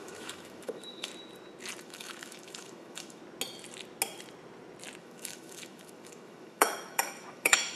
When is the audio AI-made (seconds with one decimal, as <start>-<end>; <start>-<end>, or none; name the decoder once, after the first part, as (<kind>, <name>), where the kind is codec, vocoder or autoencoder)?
0.0-1.1 (autoencoder, DAC-VAE); 1.8-3.2; 5.0-7.8